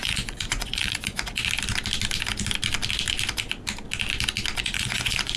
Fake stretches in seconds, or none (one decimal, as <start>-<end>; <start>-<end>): 0.0-1.4; 4.6-5.4